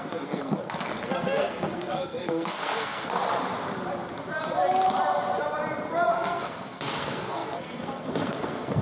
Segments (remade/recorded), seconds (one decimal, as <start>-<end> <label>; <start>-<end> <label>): 0.0-3.2 remade; 3.2-6.1 recorded; 6.1-8.8 remade